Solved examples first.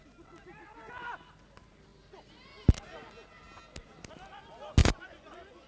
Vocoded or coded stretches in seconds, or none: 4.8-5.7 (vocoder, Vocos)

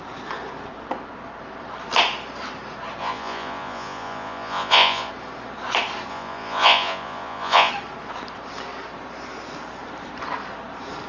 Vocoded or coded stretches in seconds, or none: 3.0-5.1 (vocoder, Vocos); 6.1-7.7

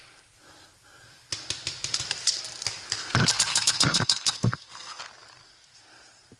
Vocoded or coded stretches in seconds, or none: 3.5-5.0 (codec, SNAC)

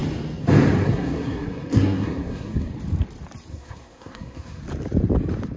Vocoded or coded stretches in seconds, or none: 0.8-2.7 (codec, SNAC); 3.5-4.6